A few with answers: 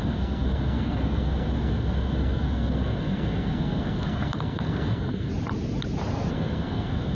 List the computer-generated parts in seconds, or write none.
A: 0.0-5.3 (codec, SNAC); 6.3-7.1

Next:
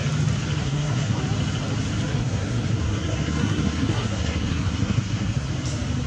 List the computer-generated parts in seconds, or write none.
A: 0.6-1.2 (codec, SNAC); 2.2-5.5

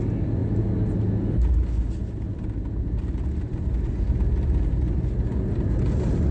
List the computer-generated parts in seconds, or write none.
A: none

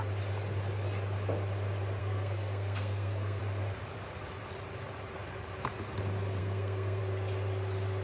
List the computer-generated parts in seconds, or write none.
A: 2.0-3.4 (codec, SNAC); 6.4-7.0

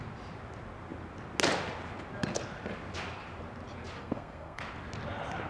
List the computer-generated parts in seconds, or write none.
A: 4.0-4.6 (codec, SNAC)

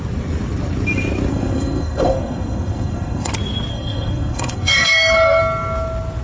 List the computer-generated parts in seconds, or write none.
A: 1.3-3.3 (codec, SNAC); 3.7-5.4

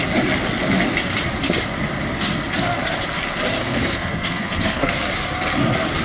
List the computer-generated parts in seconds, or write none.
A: 3.6-4.9 (codec, SNAC)

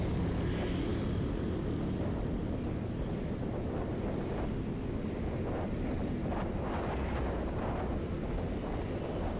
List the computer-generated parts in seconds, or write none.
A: none